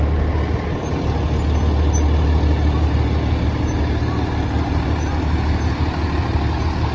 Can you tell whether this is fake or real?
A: real